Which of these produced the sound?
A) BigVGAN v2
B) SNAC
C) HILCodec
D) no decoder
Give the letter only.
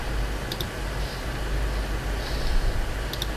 D